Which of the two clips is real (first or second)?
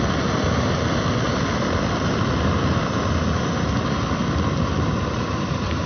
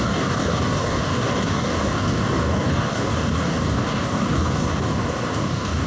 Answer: first